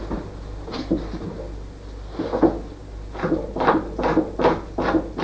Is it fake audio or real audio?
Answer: real